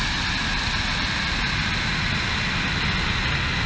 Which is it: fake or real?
real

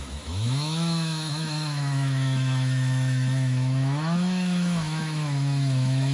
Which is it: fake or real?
fake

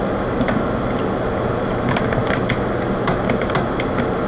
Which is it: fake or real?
real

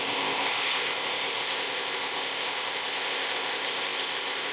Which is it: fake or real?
fake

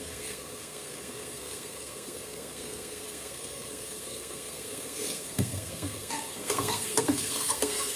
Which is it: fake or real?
fake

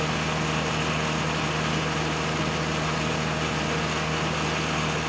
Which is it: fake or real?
real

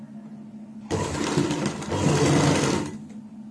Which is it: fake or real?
real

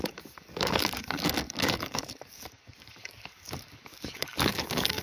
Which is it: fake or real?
fake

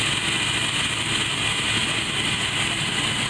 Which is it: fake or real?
real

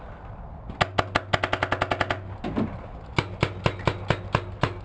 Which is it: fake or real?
real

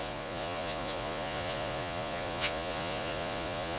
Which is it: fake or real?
fake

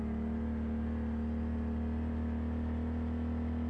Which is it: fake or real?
real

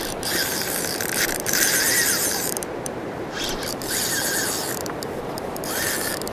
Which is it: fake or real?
fake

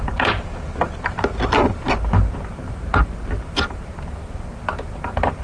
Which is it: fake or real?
real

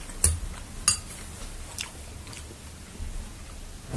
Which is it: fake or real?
real